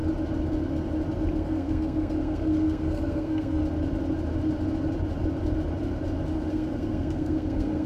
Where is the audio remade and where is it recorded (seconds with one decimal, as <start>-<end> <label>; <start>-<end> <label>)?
0.0-1.3 recorded; 1.3-3.6 remade; 3.6-6.5 recorded; 6.5-7.9 remade